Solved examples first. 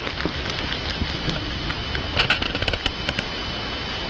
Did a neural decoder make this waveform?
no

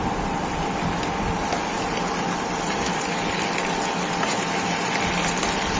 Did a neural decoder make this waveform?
no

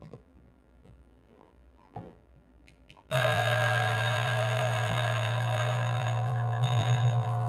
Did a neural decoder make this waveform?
yes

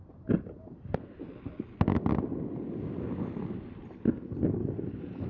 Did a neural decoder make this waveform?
no